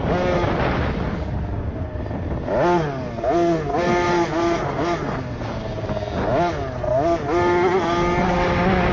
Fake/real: real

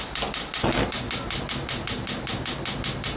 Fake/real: real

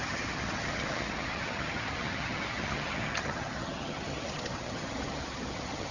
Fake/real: fake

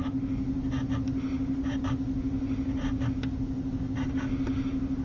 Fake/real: real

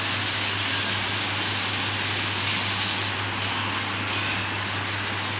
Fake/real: real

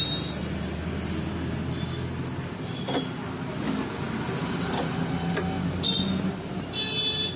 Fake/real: real